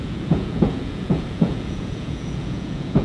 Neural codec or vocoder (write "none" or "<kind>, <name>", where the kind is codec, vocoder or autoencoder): vocoder, Vocos